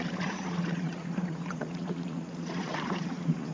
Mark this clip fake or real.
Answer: fake